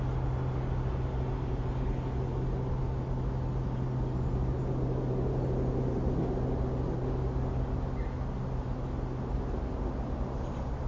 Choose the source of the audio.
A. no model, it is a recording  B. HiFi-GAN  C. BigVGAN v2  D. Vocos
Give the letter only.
A